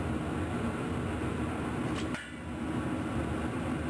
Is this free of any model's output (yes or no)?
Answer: yes